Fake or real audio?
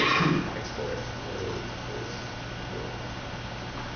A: real